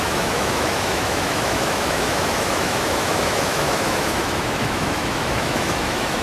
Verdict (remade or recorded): remade